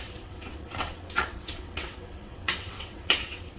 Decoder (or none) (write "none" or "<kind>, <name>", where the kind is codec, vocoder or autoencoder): vocoder, WaveNeXt